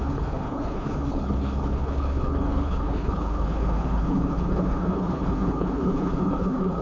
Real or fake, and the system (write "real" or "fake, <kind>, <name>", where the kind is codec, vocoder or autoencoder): fake, codec, HILCodec